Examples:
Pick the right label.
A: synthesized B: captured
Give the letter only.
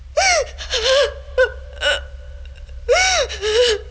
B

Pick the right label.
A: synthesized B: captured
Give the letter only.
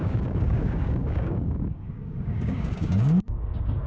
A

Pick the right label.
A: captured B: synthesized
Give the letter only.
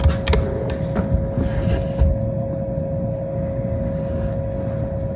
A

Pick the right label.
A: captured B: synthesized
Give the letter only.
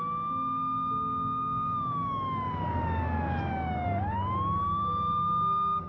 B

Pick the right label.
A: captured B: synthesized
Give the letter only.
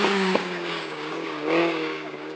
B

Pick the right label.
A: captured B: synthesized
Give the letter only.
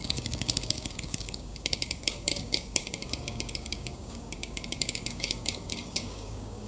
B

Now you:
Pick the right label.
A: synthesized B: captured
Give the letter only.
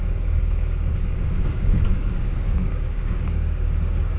A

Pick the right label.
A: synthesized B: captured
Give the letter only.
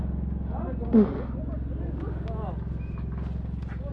B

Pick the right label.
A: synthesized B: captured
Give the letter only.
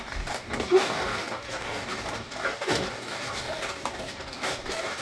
A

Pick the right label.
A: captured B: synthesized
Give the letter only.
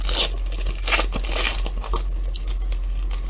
A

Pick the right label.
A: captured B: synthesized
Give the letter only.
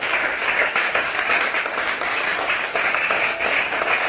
B